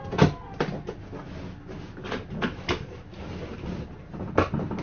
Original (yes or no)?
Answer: yes